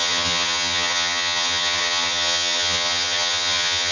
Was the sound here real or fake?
fake